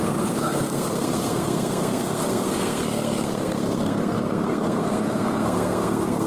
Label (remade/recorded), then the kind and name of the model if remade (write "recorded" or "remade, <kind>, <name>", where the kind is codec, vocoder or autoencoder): remade, codec, SNAC